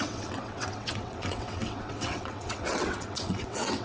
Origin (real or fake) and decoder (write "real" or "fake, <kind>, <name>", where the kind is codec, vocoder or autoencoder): fake, vocoder, WaveNeXt